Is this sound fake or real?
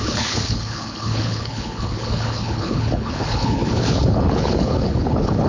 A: fake